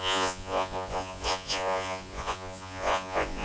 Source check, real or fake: fake